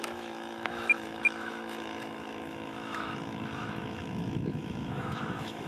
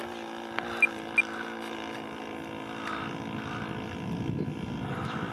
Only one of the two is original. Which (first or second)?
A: second